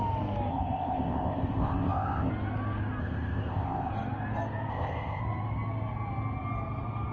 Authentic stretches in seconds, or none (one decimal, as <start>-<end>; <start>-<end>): 0.0-0.5; 2.3-3.0; 3.9-4.7; 5.2-7.1